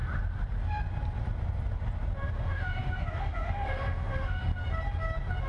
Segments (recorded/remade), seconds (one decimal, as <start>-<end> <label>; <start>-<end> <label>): 0.0-2.3 recorded; 2.3-4.5 remade; 4.5-5.5 recorded